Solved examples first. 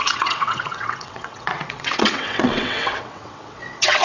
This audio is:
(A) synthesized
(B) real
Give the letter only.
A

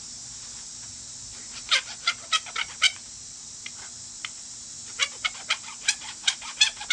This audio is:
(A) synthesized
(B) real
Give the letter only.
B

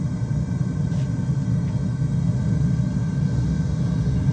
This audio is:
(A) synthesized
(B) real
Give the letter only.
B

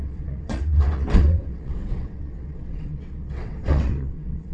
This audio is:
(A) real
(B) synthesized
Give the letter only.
B